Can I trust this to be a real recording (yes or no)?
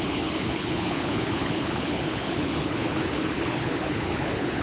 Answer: no